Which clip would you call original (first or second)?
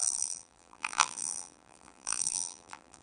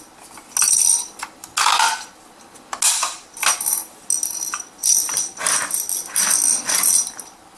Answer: second